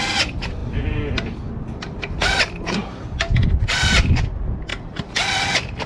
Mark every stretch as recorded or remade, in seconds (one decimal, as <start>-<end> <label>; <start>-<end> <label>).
0.0-4.7 recorded; 4.7-5.9 remade